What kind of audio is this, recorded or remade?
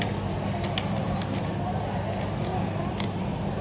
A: recorded